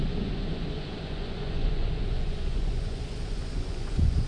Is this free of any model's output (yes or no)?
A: no